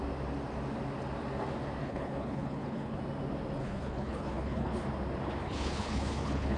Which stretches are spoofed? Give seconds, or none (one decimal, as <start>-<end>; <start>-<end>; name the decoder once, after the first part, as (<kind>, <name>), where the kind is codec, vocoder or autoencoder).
1.8-3.0 (codec, HILCodec); 3.6-4.8; 5.4-6.6